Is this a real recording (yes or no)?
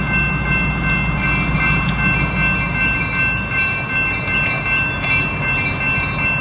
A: yes